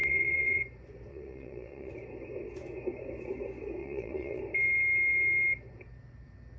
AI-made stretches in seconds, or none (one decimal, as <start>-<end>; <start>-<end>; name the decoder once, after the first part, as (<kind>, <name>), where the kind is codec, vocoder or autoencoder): 0.0-0.6 (vocoder, Vocos); 1.1-1.9; 3.8-4.4

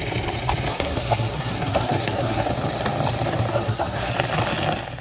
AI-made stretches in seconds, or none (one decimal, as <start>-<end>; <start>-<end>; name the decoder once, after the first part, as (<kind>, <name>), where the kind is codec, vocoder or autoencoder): 0.7-2.5 (codec, SNAC); 3.5-4.1

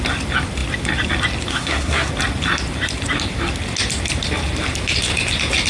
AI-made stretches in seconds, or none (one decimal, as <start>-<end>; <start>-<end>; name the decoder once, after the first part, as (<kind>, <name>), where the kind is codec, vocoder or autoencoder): 1.5-2.1 (codec, SNAC)

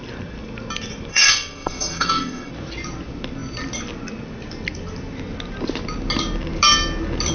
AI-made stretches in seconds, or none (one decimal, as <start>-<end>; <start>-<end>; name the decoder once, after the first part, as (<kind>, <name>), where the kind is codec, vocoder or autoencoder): 1.1-2.5 (codec, SNAC)

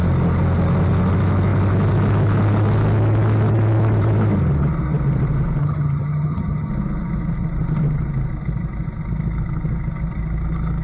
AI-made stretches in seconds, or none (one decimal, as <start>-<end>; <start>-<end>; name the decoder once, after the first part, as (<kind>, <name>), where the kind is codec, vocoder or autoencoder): 5.6-6.7 (vocoder, HiFi-GAN)

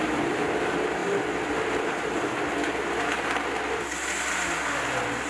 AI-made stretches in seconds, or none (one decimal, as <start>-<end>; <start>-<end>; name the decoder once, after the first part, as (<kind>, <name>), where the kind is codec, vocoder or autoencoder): none

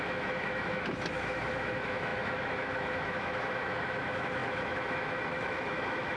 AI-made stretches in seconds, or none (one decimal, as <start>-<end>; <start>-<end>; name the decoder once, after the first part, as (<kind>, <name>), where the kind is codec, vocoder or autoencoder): 0.0-6.2 (autoencoder, DAC-VAE)